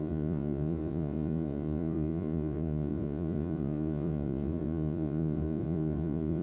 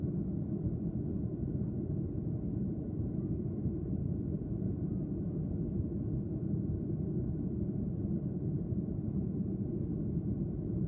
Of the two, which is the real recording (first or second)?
second